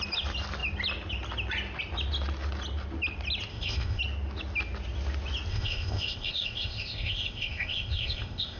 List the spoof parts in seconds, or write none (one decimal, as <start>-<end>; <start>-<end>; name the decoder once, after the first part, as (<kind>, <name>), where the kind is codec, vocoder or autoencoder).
3.5-4.0 (codec, ZipCodec); 5.5-8.6